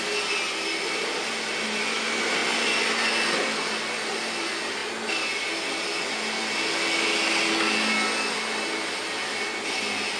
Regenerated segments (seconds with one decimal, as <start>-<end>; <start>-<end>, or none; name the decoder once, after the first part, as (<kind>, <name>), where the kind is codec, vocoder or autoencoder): none